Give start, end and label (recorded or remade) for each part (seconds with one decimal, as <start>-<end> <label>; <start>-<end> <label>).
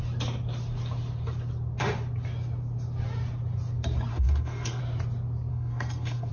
0.0-4.1 recorded; 4.1-4.8 remade; 4.8-5.5 recorded; 5.5-6.3 remade